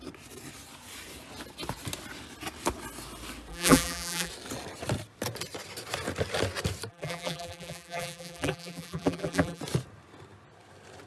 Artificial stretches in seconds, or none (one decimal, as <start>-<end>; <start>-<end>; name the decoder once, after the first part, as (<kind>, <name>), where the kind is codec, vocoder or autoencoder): 3.5-4.3 (vocoder, BigVGAN v2); 6.9-9.6